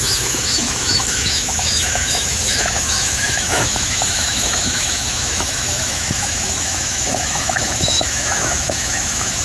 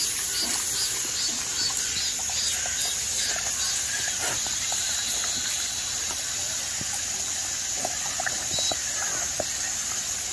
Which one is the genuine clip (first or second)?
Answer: second